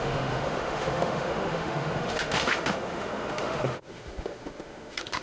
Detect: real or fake fake